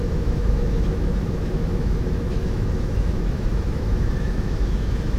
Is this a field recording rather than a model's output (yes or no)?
no